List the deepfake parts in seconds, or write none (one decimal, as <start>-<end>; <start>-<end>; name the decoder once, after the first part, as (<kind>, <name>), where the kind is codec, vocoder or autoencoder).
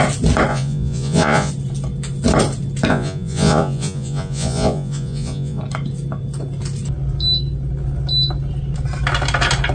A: 0.5-1.5 (vocoder, Vocos); 2.9-5.6